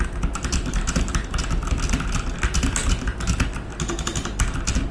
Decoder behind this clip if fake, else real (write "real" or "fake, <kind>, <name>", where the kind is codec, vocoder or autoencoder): real